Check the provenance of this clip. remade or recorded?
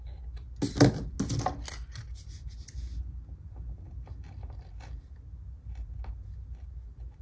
recorded